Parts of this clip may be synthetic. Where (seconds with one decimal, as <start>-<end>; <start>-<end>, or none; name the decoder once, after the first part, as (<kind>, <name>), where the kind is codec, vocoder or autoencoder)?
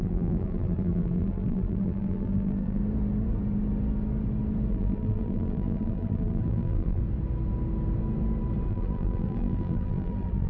0.0-2.8 (vocoder, BigVGAN v2); 4.7-7.0; 8.7-10.5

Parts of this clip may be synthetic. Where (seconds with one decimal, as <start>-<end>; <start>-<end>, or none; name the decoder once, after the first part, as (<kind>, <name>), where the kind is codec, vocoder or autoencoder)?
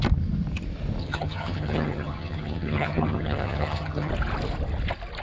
1.0-4.1 (vocoder, HiFi-GAN)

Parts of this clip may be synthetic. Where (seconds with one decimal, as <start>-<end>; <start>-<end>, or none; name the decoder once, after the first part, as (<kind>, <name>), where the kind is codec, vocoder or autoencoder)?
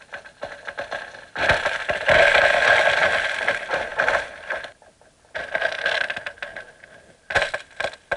none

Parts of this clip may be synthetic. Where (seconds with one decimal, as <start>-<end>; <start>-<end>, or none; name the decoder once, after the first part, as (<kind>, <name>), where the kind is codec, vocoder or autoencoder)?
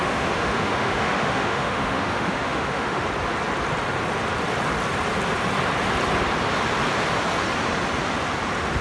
0.0-3.0 (autoencoder, DAC-VAE)